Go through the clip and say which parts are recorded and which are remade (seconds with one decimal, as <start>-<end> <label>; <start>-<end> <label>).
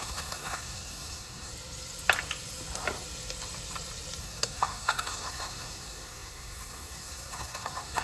0.0-1.5 remade; 1.5-4.2 recorded; 4.2-8.0 remade